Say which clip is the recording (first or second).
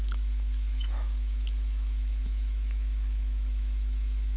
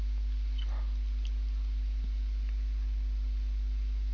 second